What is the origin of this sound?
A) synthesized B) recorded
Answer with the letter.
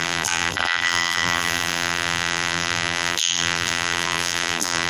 A